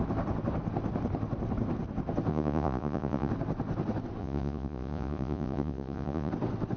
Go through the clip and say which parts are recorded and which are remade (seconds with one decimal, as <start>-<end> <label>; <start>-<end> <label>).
0.0-2.3 recorded; 2.3-3.3 remade; 3.3-4.2 recorded; 4.2-6.3 remade; 6.3-6.8 recorded